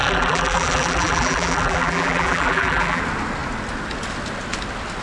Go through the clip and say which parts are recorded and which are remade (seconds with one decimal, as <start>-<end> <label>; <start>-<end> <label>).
0.0-3.0 remade; 3.0-5.0 recorded